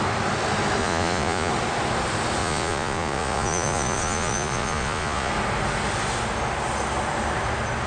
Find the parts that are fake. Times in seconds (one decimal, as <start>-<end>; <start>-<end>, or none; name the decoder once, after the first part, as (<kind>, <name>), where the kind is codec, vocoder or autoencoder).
0.8-1.5 (vocoder, Vocos); 2.4-5.3